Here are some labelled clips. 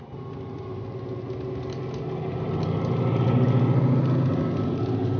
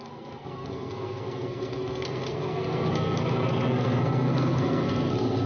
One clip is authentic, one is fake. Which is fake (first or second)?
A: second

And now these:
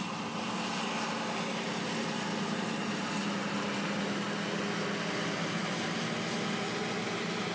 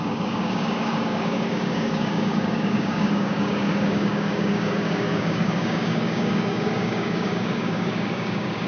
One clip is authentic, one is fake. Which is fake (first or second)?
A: second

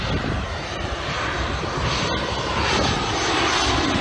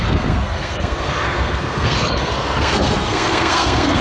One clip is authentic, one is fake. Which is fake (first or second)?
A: second